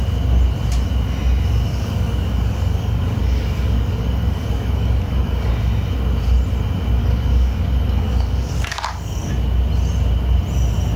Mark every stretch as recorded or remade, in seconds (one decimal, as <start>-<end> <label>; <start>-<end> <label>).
0.0-1.7 recorded; 1.7-5.5 remade; 5.5-7.0 recorded; 7.0-9.3 remade; 9.3-11.0 recorded

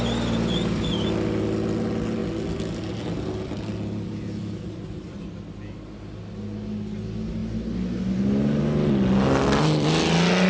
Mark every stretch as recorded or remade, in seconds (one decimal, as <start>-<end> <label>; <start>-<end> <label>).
0.0-10.5 recorded

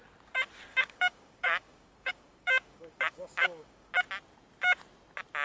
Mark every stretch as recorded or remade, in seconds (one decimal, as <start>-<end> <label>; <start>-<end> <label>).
0.0-0.7 recorded; 0.7-3.9 remade; 3.9-5.4 recorded

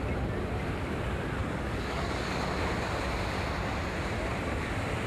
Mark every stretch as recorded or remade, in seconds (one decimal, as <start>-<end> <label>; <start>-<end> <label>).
0.0-1.4 recorded; 1.4-2.4 remade; 2.4-5.1 recorded

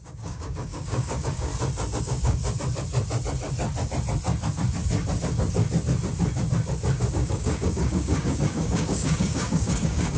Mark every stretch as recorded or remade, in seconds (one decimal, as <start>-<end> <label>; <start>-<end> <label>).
0.0-1.5 remade; 1.5-2.0 recorded; 2.0-2.4 remade; 2.4-7.1 recorded; 7.1-10.2 remade

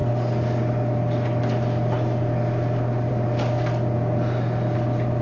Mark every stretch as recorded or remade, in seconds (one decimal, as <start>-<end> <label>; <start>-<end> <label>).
0.0-5.2 recorded

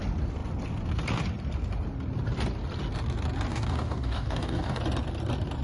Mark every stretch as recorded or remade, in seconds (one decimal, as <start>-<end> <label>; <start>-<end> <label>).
0.0-3.5 recorded; 3.5-4.8 remade; 4.8-5.6 recorded

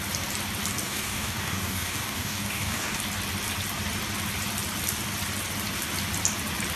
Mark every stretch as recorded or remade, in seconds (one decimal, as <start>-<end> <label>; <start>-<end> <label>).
0.0-0.8 recorded; 0.8-3.0 remade; 3.0-6.8 recorded